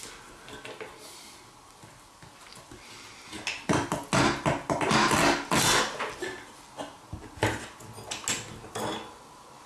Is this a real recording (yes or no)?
yes